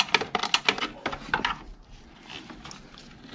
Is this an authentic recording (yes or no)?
yes